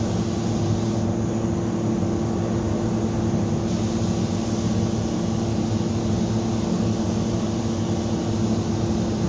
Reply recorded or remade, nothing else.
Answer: recorded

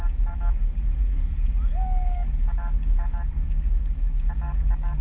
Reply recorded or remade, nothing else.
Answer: remade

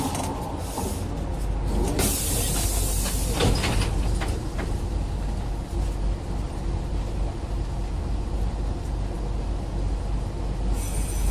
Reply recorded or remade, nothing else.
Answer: recorded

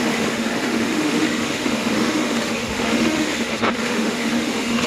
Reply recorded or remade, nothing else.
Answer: remade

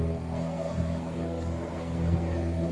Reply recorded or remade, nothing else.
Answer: remade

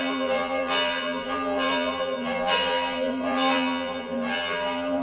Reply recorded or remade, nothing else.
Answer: remade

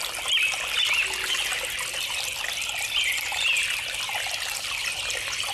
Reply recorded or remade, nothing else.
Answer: recorded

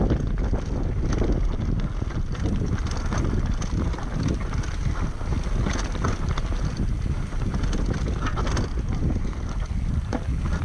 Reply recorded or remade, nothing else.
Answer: recorded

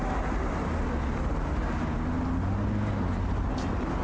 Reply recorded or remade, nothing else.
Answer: recorded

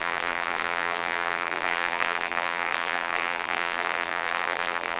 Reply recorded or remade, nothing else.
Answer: remade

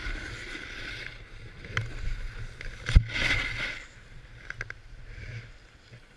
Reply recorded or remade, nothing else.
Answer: recorded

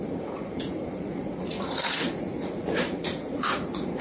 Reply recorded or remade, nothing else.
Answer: remade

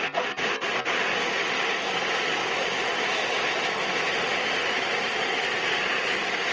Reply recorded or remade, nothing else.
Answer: recorded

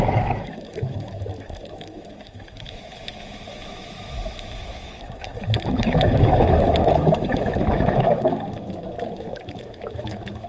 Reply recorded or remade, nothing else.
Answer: remade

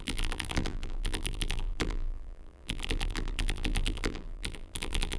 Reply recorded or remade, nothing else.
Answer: remade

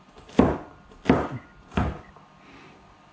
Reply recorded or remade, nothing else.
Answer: recorded